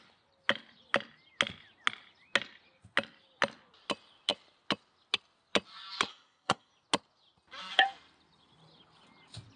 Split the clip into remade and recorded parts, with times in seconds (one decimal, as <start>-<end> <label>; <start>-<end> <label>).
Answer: 0.0-6.1 recorded; 6.1-6.7 remade; 6.7-9.6 recorded